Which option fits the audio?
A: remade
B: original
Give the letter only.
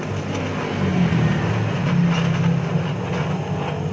B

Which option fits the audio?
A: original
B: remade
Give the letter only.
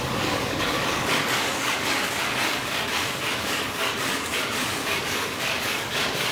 B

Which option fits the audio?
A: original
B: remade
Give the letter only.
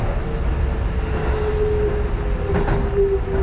A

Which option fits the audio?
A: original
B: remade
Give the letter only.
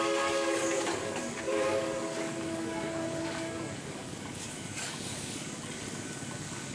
B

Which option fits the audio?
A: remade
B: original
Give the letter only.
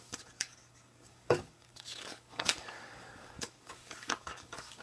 A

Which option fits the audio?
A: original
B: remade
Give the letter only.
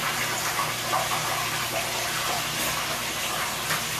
A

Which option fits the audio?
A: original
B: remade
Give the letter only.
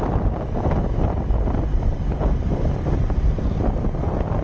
A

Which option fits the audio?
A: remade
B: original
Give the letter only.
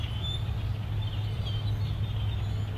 B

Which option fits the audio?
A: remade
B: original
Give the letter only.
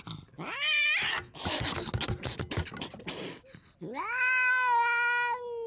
B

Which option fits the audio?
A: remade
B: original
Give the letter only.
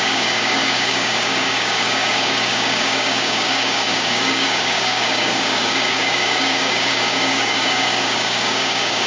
A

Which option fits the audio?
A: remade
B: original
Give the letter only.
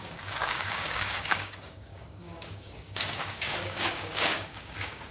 A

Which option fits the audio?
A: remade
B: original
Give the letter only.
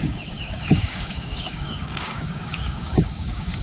A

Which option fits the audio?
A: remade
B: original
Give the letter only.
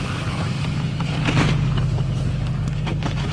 A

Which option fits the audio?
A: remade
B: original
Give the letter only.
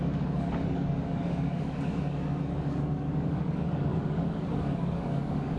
A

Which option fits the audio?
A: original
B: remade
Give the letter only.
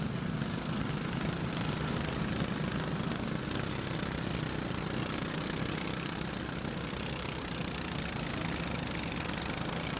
A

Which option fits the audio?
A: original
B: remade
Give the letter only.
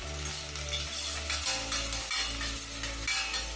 A